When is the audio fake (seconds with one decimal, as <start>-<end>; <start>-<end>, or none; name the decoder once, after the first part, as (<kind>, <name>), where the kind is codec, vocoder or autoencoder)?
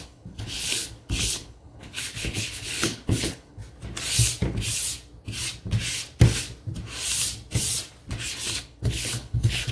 0.0-3.6 (codec, HILCodec); 8.6-9.7